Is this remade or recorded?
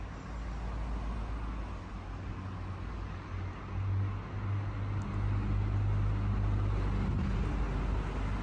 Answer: recorded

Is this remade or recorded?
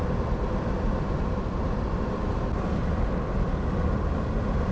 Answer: recorded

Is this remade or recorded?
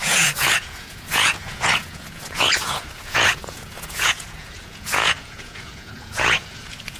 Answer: remade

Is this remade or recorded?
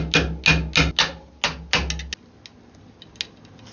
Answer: recorded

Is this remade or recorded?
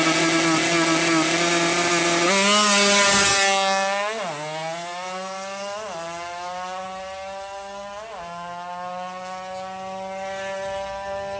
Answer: recorded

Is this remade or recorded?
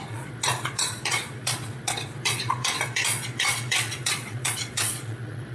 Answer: remade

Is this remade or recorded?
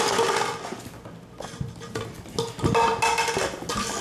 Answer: recorded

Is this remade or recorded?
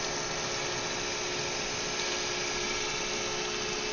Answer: recorded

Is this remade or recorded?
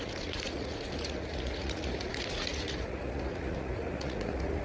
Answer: remade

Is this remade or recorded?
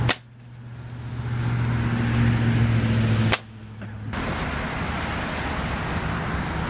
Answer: recorded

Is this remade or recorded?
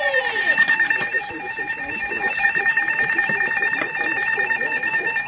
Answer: remade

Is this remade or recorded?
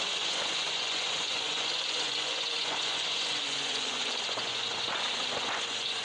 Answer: remade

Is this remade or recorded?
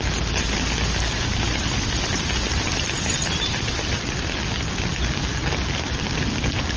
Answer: recorded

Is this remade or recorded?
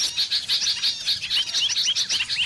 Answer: recorded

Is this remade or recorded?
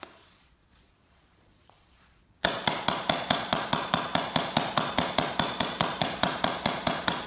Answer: remade